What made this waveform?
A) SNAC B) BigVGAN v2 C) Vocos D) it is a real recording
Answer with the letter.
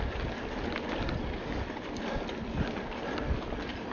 D